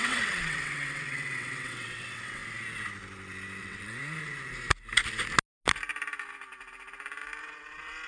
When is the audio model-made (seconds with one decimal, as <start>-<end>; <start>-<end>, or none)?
0.0-2.4; 3.6-4.0; 7.4-8.1